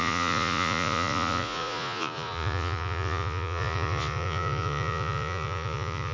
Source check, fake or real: fake